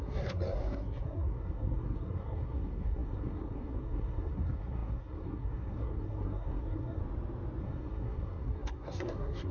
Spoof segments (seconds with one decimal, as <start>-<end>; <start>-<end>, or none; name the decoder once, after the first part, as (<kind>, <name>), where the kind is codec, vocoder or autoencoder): 0.0-7.0 (codec, SNAC); 7.6-9.5